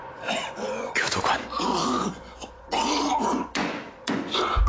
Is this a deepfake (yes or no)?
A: yes